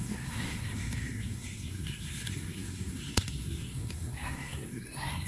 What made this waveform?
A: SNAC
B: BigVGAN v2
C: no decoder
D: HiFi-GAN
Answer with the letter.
A